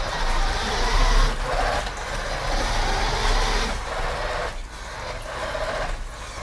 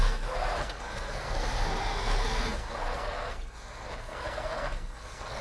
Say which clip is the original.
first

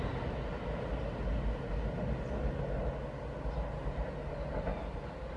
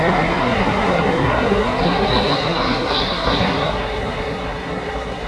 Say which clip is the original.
first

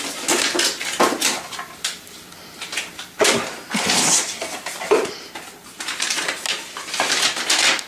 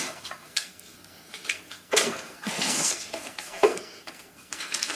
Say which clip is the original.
first